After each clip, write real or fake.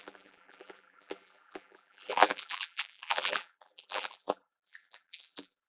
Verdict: fake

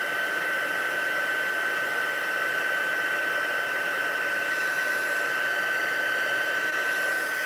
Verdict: real